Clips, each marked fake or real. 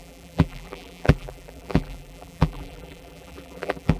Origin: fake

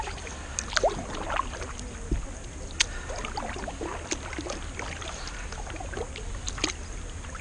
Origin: real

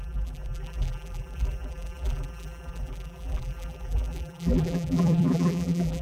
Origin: fake